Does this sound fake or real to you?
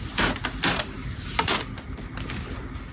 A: real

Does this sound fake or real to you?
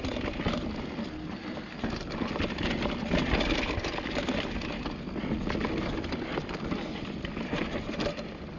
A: real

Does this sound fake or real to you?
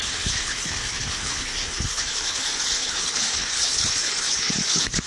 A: fake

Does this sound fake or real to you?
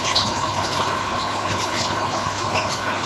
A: fake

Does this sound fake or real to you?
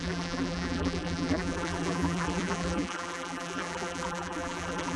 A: fake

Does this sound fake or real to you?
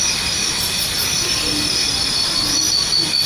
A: real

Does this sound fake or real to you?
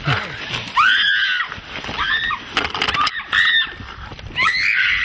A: real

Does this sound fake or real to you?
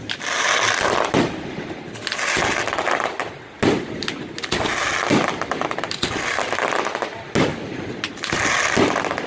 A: real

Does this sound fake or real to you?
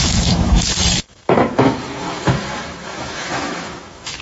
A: fake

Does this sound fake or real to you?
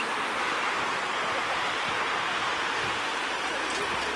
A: real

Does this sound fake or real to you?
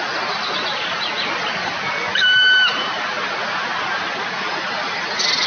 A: real